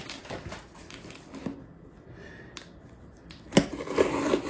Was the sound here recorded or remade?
recorded